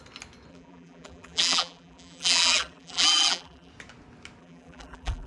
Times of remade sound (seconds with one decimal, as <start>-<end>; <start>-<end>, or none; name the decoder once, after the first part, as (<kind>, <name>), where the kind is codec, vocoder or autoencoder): 0.5-3.7 (vocoder, BigVGAN v2); 4.4-5.3